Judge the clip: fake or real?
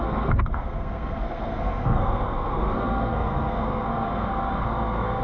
fake